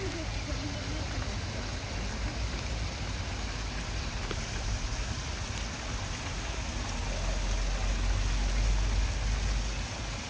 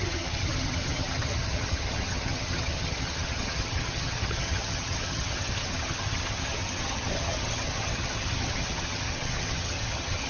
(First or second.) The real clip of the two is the first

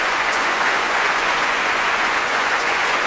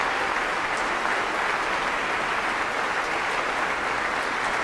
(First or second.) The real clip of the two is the second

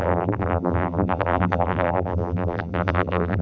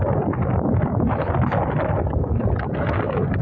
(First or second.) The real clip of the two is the second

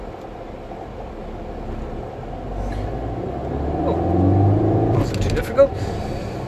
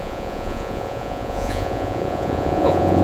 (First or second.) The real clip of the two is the first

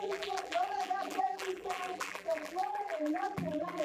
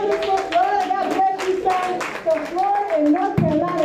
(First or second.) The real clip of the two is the second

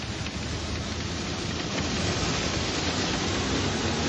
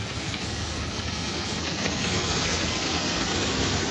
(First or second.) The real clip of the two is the first